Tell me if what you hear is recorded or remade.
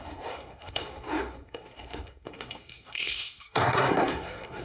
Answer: remade